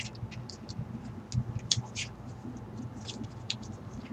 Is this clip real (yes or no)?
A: yes